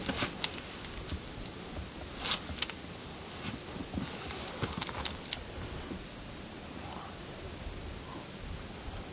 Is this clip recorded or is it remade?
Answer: recorded